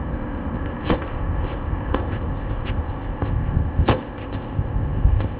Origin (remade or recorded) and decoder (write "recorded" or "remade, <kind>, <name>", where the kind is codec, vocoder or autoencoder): remade, codec, ZipCodec